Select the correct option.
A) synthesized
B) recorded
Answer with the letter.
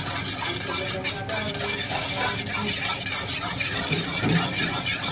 B